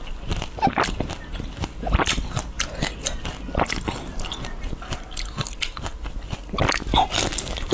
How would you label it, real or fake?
real